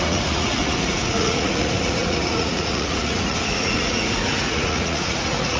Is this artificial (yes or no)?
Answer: yes